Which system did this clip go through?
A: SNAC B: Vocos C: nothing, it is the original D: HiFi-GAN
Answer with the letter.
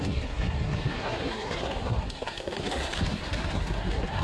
A